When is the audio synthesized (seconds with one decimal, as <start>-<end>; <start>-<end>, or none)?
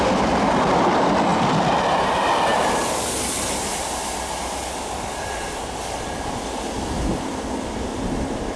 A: 7.9-8.6